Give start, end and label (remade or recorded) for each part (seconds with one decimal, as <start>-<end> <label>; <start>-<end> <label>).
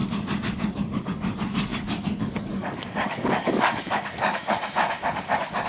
0.0-1.0 recorded; 1.0-4.6 remade; 4.6-5.2 recorded; 5.2-5.7 remade